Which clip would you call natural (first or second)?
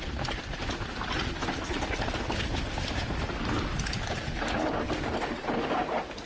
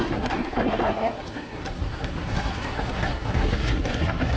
first